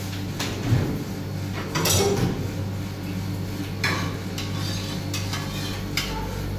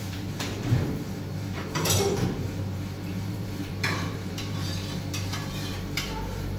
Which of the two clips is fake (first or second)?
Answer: second